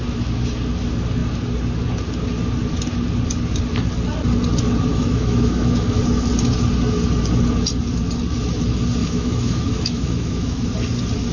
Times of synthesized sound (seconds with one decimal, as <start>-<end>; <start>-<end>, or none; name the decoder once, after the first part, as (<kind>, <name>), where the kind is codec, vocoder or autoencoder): 4.9-6.0 (autoencoder, DAC-VAE); 9.0-10.7